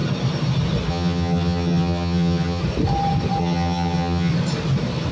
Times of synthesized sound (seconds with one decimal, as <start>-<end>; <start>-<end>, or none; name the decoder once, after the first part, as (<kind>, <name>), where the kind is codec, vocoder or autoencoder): 0.9-2.6 (vocoder, HiFi-GAN); 3.4-4.3

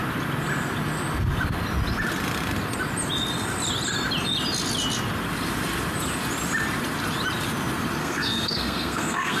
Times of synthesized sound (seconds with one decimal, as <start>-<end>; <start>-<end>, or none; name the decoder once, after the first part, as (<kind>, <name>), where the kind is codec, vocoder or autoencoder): 8.0-9.4 (codec, SNAC)

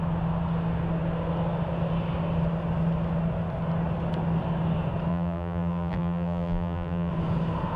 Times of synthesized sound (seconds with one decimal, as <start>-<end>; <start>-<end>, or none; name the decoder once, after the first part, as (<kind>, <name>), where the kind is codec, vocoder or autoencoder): 5.1-7.1 (vocoder, BigVGAN v2)

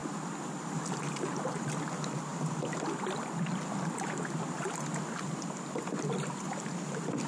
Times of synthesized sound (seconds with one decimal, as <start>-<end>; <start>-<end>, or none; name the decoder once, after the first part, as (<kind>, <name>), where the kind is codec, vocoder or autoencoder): 0.0-7.3 (vocoder, BigVGAN v2)

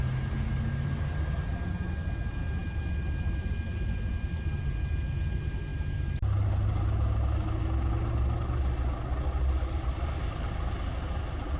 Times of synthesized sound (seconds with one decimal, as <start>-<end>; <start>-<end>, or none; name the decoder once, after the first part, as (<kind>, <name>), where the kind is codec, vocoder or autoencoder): none

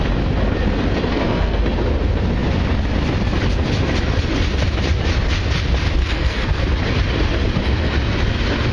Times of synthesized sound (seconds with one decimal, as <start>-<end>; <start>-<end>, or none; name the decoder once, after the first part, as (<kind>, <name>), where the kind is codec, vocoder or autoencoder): 1.1-1.6 (codec, SNAC); 6.0-6.6